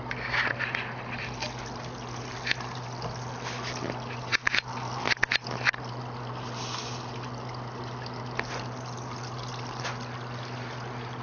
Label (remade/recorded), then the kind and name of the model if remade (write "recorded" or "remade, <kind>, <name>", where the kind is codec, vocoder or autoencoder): recorded